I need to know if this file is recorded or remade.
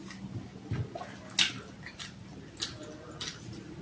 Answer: recorded